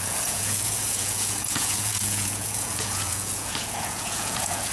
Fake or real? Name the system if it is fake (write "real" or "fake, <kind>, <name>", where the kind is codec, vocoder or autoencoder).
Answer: fake, vocoder, Vocos